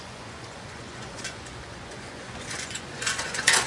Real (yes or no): no